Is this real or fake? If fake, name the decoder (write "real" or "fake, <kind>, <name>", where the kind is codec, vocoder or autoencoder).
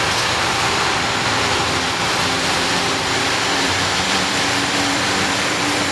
fake, vocoder, BigVGAN v2